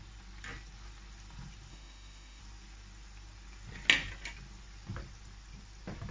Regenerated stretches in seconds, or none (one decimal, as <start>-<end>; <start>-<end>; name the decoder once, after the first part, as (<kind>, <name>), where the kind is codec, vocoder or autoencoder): 1.7-2.4 (autoencoder, DAC-VAE)